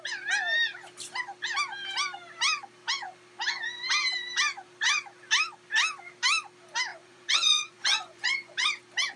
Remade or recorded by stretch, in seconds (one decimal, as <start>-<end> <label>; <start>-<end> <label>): 0.0-6.9 recorded; 6.9-8.5 remade; 8.5-9.2 recorded